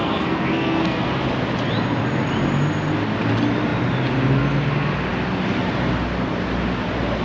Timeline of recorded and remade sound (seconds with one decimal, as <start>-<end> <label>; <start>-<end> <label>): 0.0-1.2 remade; 1.2-7.2 recorded